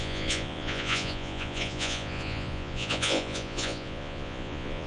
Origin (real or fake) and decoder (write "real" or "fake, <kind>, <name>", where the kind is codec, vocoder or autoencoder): fake, vocoder, Vocos